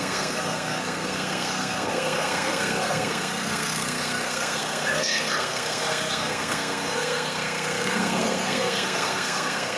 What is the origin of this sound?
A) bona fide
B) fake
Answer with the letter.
B